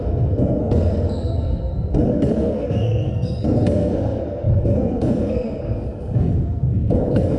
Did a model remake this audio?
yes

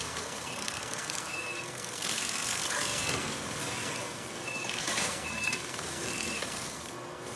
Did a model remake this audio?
yes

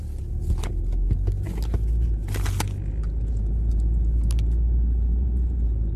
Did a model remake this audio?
no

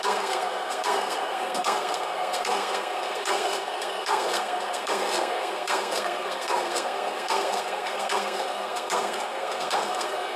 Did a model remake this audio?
yes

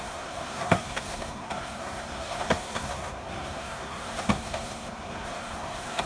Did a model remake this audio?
yes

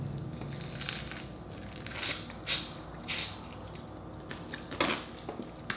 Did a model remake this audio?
no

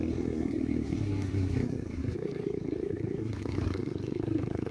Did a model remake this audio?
yes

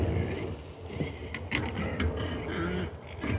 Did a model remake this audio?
no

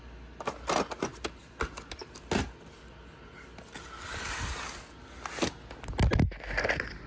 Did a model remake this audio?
no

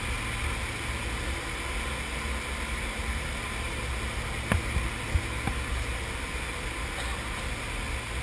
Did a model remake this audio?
no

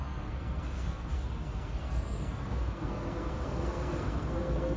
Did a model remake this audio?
yes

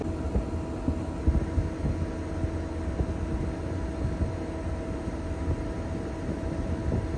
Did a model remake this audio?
no